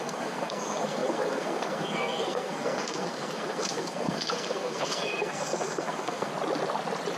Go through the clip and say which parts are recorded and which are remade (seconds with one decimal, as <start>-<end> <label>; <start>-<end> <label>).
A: 0.0-6.3 remade; 6.3-7.2 recorded